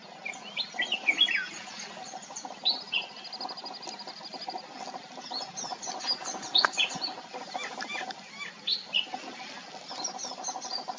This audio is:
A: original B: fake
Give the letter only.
A